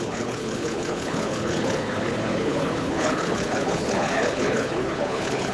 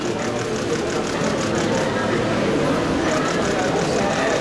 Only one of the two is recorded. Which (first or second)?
second